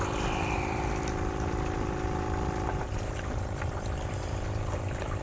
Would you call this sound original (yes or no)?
yes